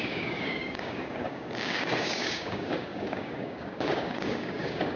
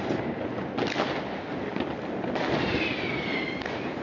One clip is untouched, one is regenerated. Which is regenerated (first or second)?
first